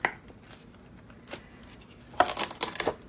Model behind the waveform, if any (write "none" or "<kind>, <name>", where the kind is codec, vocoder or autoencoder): none